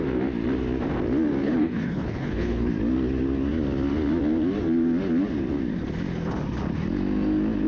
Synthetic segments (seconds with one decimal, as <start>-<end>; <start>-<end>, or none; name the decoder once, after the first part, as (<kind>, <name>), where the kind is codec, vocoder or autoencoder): 1.4-2.7 (codec, HILCodec)